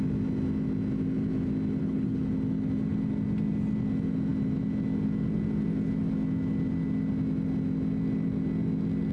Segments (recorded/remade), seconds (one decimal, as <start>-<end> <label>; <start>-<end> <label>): 0.0-1.8 recorded; 1.8-2.3 remade; 2.3-9.1 recorded